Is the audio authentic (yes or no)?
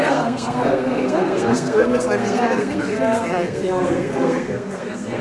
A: no